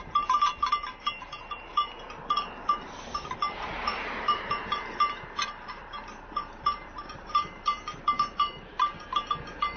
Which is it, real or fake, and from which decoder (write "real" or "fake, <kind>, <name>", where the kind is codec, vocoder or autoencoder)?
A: fake, vocoder, BigVGAN v2